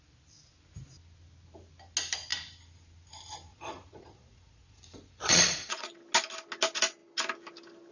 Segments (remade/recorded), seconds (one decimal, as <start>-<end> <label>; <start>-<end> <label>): 0.0-3.5 recorded; 3.5-5.9 remade; 5.9-7.9 recorded